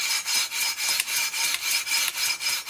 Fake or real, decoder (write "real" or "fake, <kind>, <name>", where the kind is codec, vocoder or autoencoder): fake, vocoder, BigVGAN v2